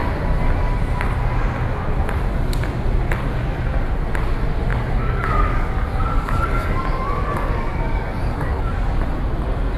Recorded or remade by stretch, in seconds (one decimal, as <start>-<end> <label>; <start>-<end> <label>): 0.0-4.7 recorded; 4.7-9.0 remade; 9.0-9.8 recorded